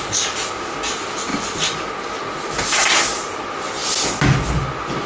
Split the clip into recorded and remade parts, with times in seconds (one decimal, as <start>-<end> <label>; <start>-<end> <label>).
0.0-5.1 recorded